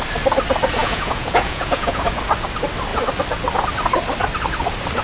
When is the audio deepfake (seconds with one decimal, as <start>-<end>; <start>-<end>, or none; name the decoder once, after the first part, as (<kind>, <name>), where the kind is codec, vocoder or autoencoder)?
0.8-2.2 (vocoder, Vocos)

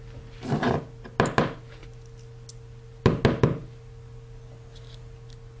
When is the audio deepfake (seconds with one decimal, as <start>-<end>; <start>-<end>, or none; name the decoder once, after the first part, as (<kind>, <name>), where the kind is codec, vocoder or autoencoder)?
none

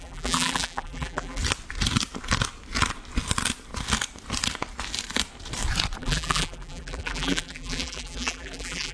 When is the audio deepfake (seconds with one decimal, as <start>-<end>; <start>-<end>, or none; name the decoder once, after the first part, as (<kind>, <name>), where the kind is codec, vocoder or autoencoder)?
0.0-1.4 (vocoder, BigVGAN v2); 6.0-8.9

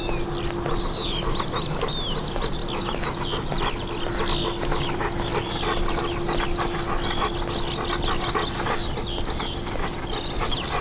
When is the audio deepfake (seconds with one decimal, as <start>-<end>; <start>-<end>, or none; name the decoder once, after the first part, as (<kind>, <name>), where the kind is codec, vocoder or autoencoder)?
none

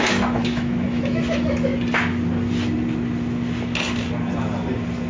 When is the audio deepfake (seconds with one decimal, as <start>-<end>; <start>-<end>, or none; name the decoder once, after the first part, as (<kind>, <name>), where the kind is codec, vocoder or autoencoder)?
0.0-1.7 (autoencoder, DAC-VAE)